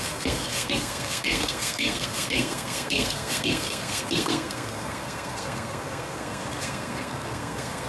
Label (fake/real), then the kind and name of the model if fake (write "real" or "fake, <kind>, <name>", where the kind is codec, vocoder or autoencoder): fake, codec, SNAC